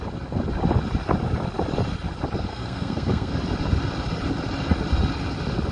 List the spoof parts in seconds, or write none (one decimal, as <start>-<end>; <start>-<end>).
2.5-3.3